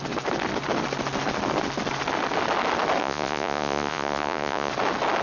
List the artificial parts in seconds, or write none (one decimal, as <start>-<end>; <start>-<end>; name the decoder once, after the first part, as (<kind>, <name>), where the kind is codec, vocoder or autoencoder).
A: 3.0-4.7 (vocoder, Vocos)